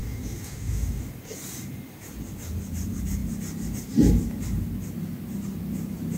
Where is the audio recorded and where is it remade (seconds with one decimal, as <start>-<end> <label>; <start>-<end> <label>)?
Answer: 0.0-1.0 remade; 1.0-6.2 recorded